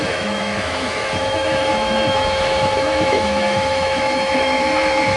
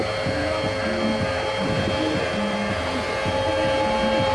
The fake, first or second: first